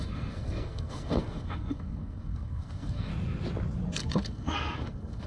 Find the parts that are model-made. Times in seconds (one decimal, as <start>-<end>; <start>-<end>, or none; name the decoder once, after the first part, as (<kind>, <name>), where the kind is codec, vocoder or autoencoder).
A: 0.0-3.1 (codec, SNAC); 3.9-5.3